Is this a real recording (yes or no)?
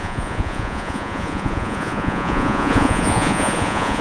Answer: no